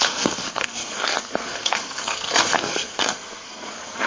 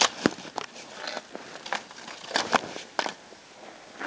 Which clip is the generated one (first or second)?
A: first